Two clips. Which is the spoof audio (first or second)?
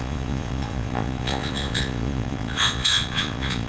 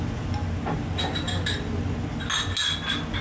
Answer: first